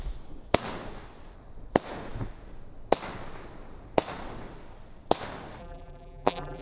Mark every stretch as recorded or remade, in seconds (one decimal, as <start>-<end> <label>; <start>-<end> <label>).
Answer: 0.0-5.6 recorded; 5.6-6.6 remade